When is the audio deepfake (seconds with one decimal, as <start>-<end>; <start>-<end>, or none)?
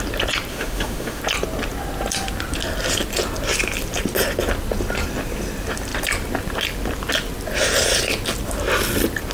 0.5-1.2